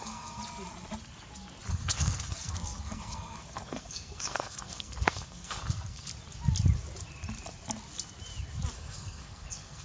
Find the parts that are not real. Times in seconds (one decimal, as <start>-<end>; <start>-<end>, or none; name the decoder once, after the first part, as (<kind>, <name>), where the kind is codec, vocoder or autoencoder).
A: 0.0-0.4 (codec, SNAC); 1.7-6.1; 8.7-9.8